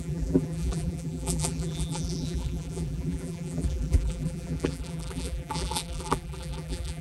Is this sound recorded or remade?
remade